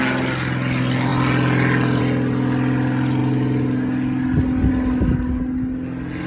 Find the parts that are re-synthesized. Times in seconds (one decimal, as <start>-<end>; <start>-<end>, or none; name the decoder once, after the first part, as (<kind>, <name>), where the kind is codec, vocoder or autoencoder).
none